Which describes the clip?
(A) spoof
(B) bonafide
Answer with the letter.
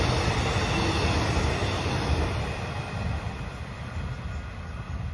B